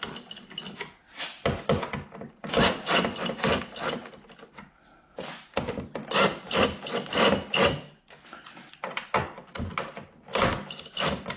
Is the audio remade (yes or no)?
no